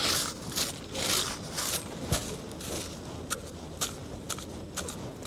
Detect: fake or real real